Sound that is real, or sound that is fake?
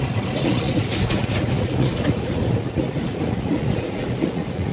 fake